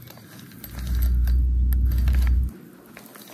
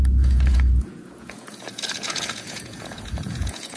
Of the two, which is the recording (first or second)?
first